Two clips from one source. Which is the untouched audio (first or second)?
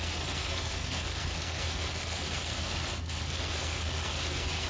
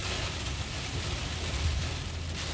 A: second